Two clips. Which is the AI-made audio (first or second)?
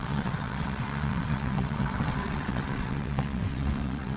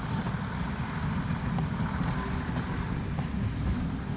first